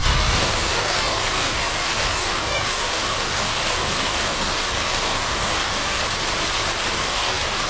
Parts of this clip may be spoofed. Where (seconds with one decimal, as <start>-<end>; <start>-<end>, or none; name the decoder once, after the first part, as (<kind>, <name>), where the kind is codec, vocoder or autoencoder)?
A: 0.0-6.0 (codec, DAC); 7.0-7.7